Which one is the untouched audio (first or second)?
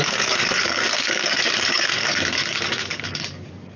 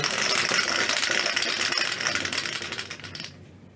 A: second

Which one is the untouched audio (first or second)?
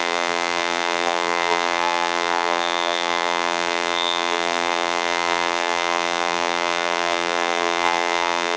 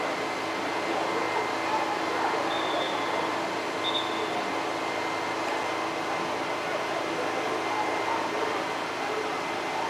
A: second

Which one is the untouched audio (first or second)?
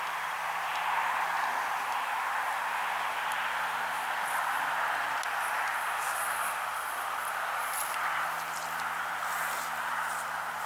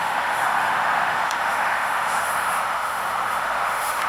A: first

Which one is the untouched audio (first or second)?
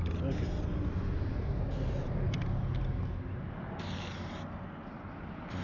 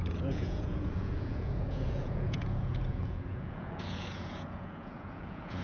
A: first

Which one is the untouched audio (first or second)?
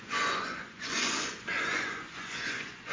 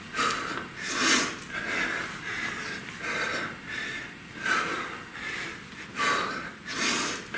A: second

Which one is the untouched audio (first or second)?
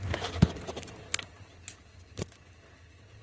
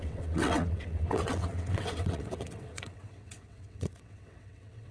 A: first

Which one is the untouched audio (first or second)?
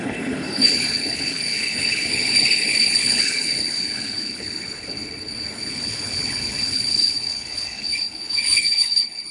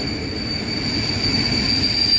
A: second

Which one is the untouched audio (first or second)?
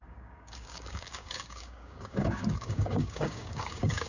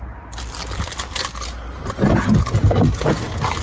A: second